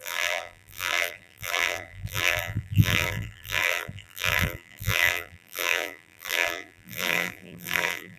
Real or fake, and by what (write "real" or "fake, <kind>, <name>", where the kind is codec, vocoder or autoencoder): fake, vocoder, BigVGAN v2